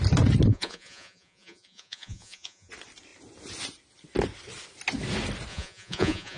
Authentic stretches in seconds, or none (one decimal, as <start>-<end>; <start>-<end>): 0.0-0.5; 2.7-5.5